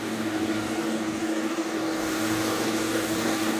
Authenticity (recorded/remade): remade